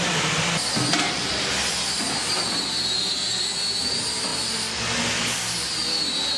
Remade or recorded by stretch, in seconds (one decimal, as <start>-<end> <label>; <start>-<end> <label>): 0.0-6.4 recorded